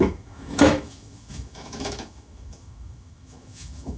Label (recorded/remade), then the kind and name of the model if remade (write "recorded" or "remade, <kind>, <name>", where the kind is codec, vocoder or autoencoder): remade, autoencoder, DAC-VAE